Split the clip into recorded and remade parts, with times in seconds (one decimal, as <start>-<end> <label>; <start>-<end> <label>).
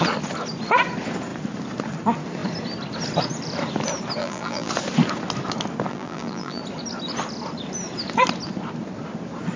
0.0-4.2 recorded; 4.2-4.7 remade; 4.7-5.9 recorded; 5.9-6.6 remade; 6.6-9.6 recorded